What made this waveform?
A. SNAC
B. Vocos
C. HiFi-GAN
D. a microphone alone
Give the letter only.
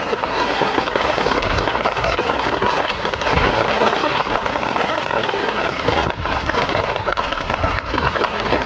A